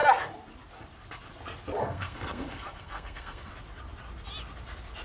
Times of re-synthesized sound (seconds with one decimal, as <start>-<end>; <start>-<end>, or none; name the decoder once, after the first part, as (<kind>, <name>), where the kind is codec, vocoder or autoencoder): 1.8-3.5 (codec, SNAC)